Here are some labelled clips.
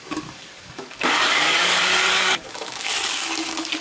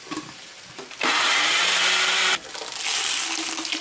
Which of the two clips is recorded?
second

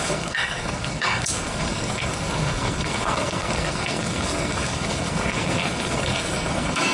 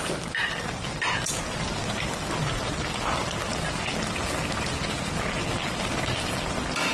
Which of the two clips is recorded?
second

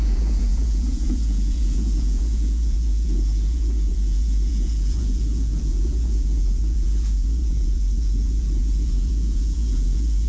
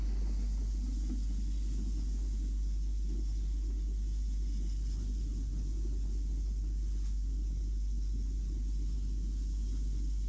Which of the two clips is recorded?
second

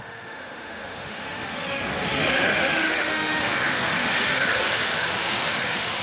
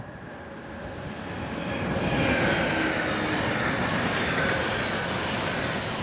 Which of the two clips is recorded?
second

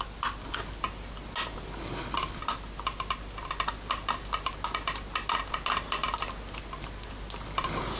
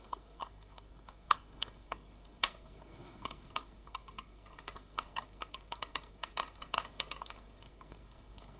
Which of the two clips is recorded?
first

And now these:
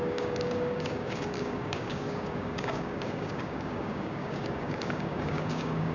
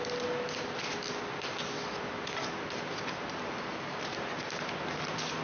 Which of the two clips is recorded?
second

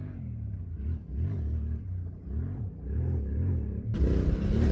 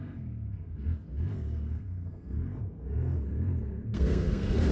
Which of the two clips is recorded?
first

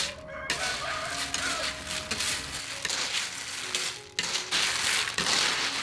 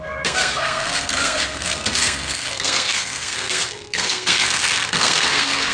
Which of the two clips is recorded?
first